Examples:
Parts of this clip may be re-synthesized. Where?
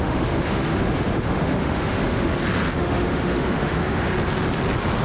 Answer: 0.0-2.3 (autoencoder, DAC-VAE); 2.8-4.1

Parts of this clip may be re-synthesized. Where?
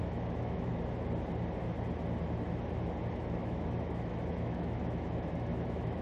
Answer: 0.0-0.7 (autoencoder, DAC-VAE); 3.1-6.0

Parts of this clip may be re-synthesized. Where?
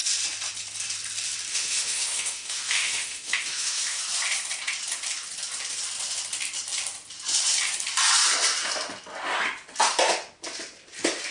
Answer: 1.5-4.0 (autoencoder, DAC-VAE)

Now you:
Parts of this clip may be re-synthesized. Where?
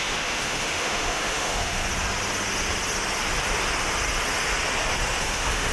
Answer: 0.0-1.8 (autoencoder, DAC-VAE); 5.2-5.7